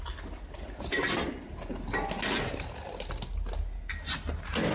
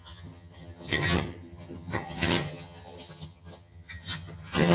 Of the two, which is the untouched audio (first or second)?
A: first